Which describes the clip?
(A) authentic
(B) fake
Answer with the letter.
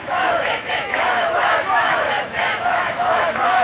B